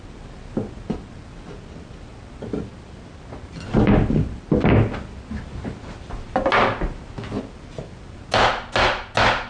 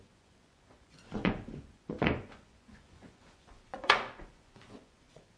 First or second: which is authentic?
first